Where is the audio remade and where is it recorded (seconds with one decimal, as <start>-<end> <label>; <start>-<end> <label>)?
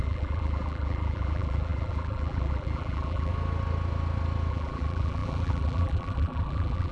0.0-3.3 remade; 3.3-4.5 recorded; 4.5-6.9 remade